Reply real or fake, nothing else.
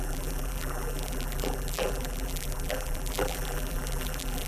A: fake